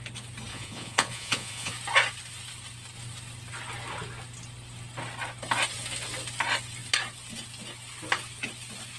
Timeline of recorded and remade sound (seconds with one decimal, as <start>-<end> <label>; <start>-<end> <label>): 0.0-0.5 recorded; 0.5-1.7 remade; 1.7-9.0 recorded